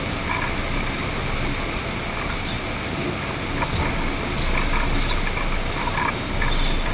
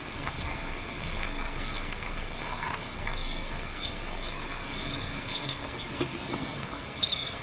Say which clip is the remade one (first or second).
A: second